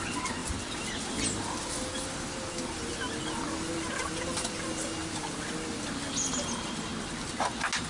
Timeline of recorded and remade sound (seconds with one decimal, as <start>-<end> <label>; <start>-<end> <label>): 0.0-7.9 recorded